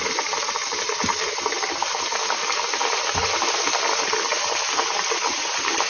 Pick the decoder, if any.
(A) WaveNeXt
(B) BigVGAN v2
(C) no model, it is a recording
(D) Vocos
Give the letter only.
C